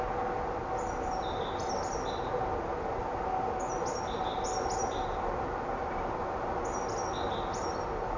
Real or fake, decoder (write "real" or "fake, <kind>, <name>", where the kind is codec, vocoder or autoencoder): real